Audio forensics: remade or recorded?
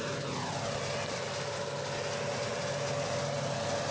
recorded